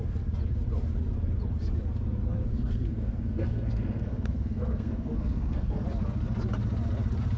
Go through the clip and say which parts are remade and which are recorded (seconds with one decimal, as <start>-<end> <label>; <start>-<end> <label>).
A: 0.0-2.5 recorded; 2.5-5.8 remade; 5.8-7.4 recorded